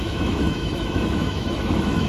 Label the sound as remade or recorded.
remade